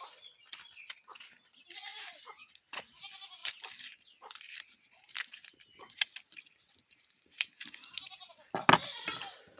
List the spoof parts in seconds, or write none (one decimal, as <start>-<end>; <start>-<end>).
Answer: 3.4-8.3